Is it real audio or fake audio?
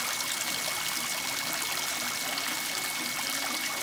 real